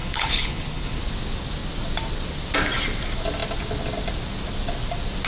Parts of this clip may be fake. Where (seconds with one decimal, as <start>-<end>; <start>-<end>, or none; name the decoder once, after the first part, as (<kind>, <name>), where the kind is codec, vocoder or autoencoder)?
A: 0.0-1.0 (codec, HILCodec)

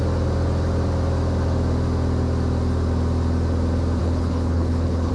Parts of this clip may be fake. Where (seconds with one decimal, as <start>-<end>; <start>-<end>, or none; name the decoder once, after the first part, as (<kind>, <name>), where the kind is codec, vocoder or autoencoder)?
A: 4.0-5.1 (codec, HILCodec)

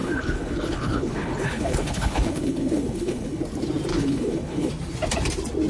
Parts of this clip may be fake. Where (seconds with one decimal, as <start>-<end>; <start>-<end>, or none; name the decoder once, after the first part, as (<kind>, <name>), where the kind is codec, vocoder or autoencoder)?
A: 0.0-3.4 (codec, HILCodec); 3.9-4.7

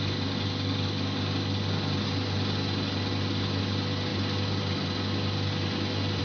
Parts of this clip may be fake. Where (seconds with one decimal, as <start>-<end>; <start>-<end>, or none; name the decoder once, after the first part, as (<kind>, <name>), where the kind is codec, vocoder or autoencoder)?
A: none

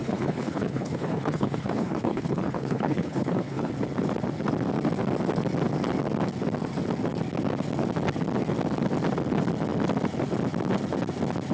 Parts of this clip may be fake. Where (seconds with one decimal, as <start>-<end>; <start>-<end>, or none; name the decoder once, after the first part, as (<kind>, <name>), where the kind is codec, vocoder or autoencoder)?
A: 0.0-3.7 (codec, HILCodec)

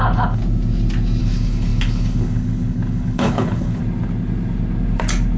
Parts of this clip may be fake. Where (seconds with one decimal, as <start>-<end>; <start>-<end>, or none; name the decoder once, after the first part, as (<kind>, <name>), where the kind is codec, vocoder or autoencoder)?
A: 0.0-0.4 (codec, HILCodec); 1.2-3.8

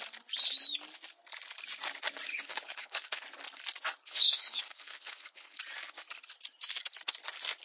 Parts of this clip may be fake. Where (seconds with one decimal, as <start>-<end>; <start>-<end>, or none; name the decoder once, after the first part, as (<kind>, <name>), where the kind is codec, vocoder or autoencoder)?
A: 2.3-3.2 (codec, HILCodec); 4.0-5.6

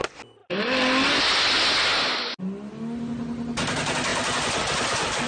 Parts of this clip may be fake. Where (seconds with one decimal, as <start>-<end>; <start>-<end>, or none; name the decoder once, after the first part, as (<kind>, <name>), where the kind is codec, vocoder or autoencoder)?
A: none